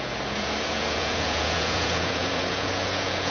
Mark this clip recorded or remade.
remade